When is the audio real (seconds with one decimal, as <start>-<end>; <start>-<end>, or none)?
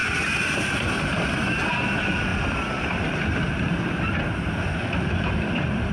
0.0-5.9